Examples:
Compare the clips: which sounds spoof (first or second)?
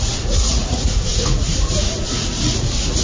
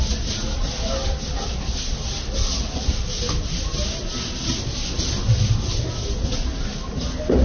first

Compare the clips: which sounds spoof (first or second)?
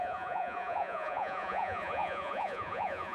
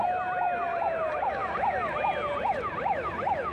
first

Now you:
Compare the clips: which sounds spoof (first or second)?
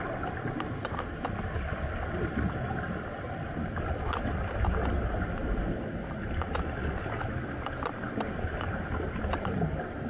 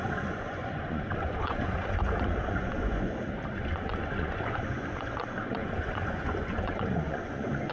second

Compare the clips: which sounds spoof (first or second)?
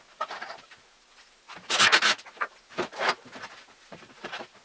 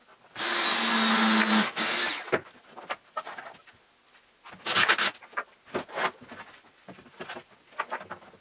first